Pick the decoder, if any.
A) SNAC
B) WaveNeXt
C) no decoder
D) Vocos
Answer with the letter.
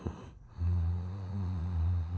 D